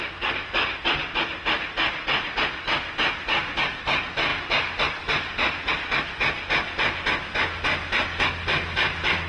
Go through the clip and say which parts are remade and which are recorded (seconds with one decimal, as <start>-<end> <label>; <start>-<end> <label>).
0.0-9.3 recorded